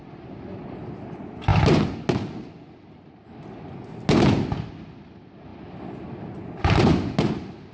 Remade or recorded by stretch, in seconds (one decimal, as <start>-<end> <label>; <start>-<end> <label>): 0.0-7.7 recorded